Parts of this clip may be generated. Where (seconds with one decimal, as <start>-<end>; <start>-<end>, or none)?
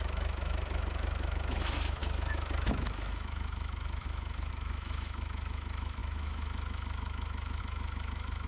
0.0-8.5